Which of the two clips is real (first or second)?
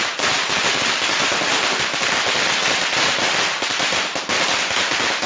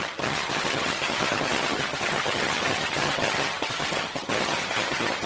first